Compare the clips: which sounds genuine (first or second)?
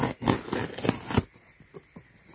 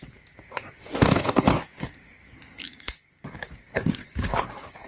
first